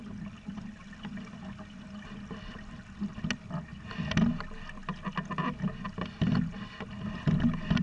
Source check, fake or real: real